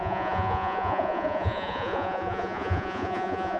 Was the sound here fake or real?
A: fake